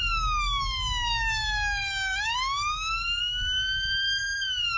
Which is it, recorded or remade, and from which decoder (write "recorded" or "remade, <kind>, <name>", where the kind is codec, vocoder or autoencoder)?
remade, codec, DAC